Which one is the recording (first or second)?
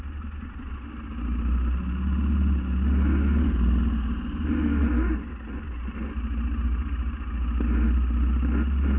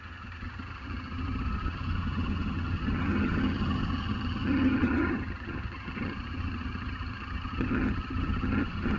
first